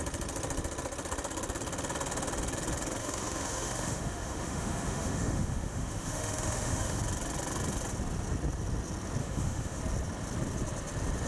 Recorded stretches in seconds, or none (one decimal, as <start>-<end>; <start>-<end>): 0.0-3.0; 7.0-9.2; 9.8-11.3